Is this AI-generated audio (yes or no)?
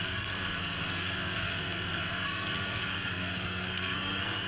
yes